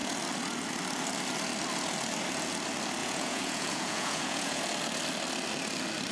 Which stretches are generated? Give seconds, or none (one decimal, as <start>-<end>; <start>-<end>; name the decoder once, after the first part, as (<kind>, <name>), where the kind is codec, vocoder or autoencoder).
3.0-4.6 (vocoder, Vocos)